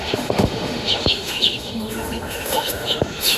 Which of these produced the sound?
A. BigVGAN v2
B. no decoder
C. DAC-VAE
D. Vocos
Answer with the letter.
C